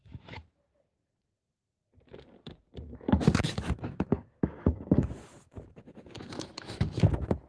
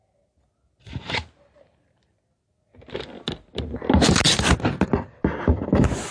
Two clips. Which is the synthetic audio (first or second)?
first